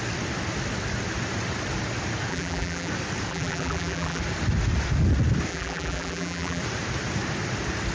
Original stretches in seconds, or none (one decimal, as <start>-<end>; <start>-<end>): 0.0-2.3; 2.9-3.3; 4.2-5.5; 6.6-7.9